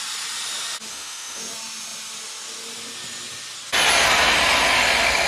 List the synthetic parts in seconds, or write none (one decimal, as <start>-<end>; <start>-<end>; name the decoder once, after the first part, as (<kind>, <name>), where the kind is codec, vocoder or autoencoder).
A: 0.9-1.4 (autoencoder, DAC-VAE)

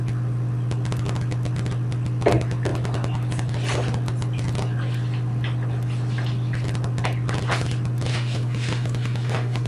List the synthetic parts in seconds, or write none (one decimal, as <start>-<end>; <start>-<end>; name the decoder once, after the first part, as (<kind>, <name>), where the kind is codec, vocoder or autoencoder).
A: 8.1-9.7 (autoencoder, DAC-VAE)